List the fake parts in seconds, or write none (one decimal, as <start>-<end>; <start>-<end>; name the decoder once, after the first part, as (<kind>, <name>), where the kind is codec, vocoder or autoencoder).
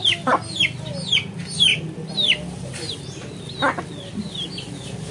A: none